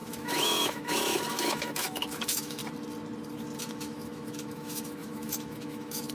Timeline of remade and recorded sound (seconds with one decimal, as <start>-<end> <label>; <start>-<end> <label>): 0.0-2.6 remade; 2.6-3.6 recorded; 3.6-6.1 remade